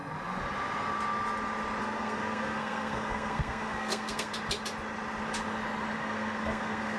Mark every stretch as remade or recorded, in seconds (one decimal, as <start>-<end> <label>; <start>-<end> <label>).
0.0-1.8 recorded; 1.8-4.3 remade; 4.3-6.0 recorded; 6.0-7.0 remade